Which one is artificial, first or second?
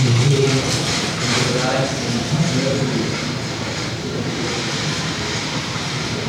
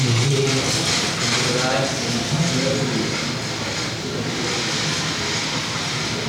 first